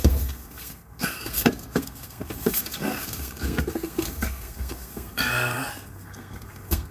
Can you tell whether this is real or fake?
fake